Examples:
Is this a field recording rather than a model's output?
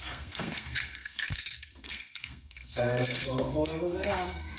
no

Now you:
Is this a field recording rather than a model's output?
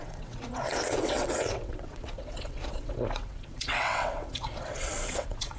no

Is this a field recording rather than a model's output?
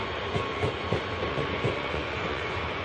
no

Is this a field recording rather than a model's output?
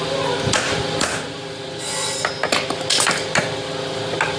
yes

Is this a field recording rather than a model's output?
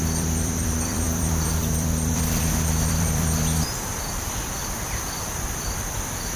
no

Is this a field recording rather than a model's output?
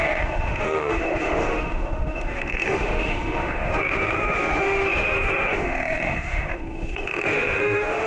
no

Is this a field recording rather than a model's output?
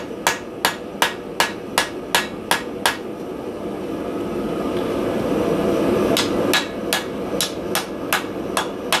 yes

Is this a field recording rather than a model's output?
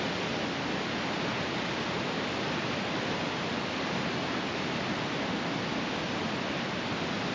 yes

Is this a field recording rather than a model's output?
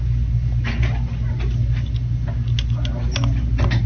yes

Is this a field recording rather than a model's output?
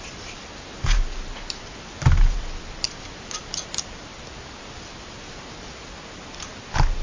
yes